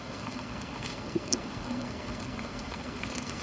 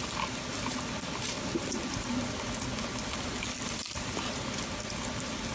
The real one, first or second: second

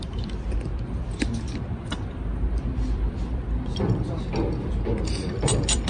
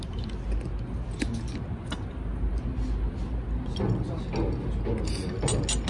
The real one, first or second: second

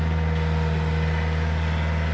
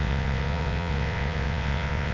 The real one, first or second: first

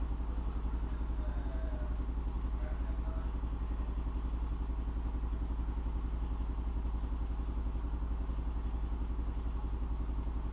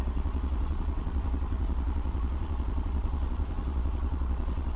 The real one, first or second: first